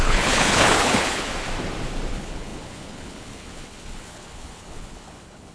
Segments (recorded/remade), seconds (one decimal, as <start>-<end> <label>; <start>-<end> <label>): 0.0-1.3 remade; 1.3-2.1 recorded; 2.1-5.5 remade